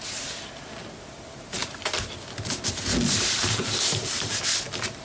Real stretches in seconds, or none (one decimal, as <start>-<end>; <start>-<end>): 0.0-5.0